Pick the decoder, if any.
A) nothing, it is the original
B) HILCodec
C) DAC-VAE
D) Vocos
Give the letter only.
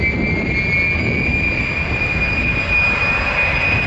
A